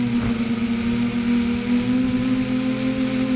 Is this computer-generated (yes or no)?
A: no